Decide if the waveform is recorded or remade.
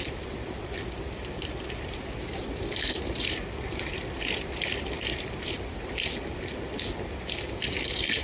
recorded